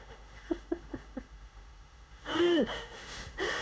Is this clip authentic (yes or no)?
no